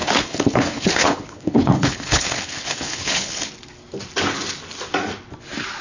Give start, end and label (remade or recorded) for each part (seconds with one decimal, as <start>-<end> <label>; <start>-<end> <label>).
0.0-3.5 remade; 3.5-5.8 recorded